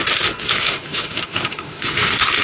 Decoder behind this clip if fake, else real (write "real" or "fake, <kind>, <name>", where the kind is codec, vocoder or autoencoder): fake, autoencoder, DAC-VAE